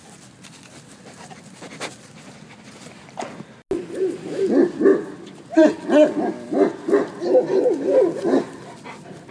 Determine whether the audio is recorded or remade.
recorded